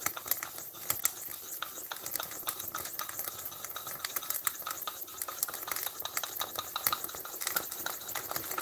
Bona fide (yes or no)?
yes